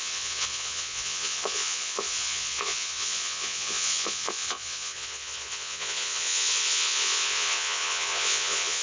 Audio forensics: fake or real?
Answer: fake